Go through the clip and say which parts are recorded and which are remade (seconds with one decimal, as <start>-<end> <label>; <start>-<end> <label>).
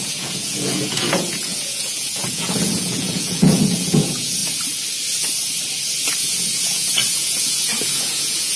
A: 0.0-4.4 remade; 4.4-6.2 recorded; 6.2-8.6 remade